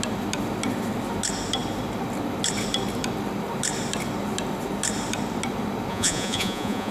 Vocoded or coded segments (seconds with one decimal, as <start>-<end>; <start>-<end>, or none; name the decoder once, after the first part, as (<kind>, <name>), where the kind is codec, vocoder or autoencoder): 5.9-6.9 (vocoder, Vocos)